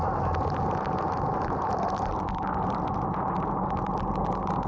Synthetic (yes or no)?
no